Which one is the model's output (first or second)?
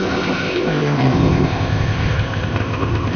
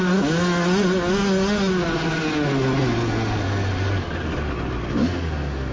first